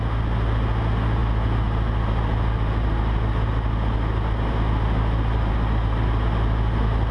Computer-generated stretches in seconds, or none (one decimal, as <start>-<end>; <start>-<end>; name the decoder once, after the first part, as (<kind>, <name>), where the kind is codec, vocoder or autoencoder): none